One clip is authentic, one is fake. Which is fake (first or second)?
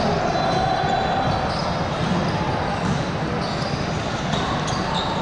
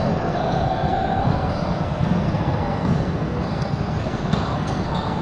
second